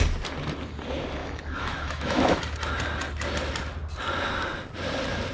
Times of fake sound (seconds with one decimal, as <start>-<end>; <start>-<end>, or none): 1.2-2.4